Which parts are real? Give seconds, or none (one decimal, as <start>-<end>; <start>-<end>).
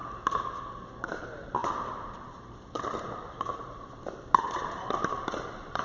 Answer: 0.0-1.0